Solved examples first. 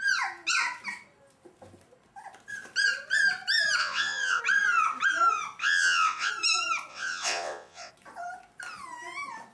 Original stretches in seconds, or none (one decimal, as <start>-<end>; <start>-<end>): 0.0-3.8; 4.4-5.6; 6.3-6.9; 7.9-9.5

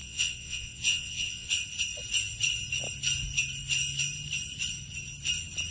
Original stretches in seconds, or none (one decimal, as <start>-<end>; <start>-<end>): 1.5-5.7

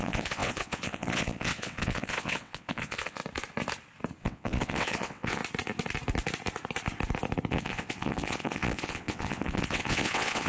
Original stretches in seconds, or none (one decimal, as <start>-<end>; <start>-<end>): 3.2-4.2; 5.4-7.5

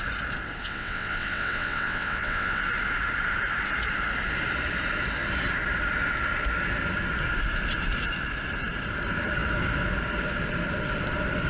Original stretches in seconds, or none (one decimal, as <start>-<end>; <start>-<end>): 0.0-0.6; 2.6-11.5

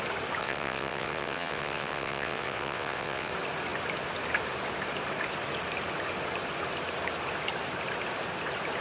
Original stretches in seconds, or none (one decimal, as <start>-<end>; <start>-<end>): 0.0-0.4; 3.3-8.8

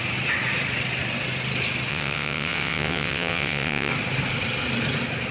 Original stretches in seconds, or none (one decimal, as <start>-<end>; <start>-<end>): 0.0-1.9; 3.9-5.3